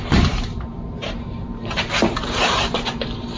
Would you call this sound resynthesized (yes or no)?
yes